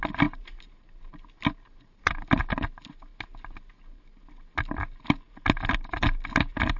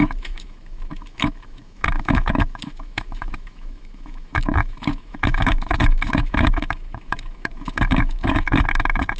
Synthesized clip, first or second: second